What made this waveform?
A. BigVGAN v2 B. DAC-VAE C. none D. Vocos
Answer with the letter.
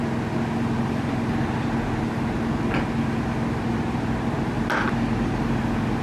C